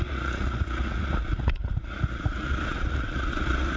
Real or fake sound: fake